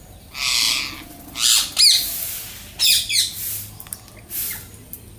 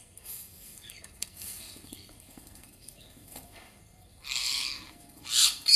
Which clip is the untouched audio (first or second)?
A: first